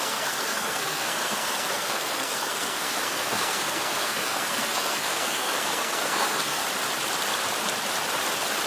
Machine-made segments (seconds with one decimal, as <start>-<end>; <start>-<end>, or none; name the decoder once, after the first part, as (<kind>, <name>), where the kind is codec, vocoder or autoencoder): 0.0-6.6 (codec, SNAC)